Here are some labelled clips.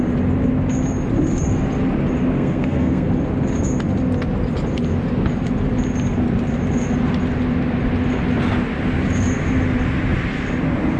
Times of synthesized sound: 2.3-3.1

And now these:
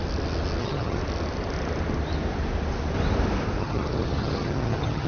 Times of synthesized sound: 0.6-1.0; 3.6-5.1

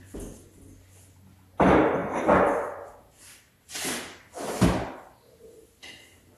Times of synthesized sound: none

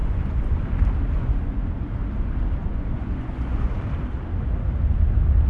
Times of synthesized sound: 0.0-0.6; 1.2-1.8; 2.6-3.8